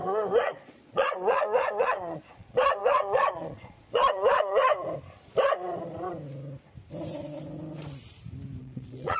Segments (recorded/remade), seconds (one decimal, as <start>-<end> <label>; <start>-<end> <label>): 0.0-4.7 remade; 4.7-8.6 recorded; 8.6-9.2 remade